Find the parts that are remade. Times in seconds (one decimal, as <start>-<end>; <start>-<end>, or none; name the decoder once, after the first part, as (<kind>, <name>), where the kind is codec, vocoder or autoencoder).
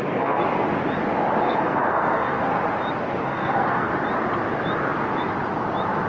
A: 0.0-0.4 (codec, SNAC); 1.4-2.5; 3.2-3.9